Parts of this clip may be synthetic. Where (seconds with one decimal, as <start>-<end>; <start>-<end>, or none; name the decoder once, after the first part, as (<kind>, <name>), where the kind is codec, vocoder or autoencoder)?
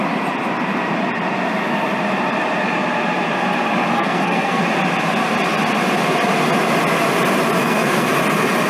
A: 3.9-4.6 (codec, SNAC); 7.6-8.1